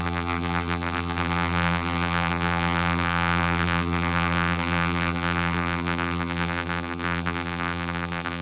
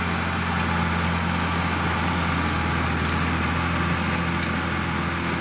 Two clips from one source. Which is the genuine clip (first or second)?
second